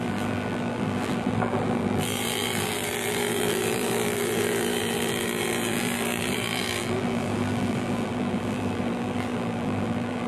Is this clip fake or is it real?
fake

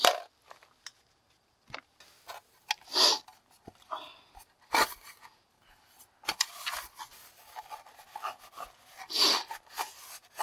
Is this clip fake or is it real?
real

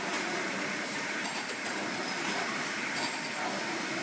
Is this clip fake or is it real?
fake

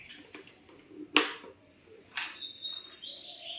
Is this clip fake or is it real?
real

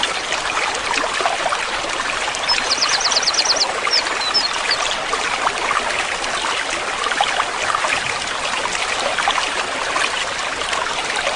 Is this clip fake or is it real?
real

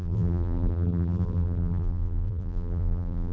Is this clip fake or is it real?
fake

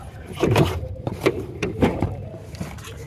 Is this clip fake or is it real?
fake